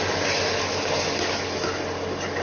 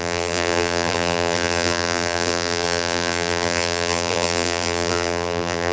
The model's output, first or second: second